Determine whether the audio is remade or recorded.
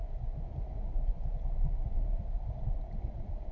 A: recorded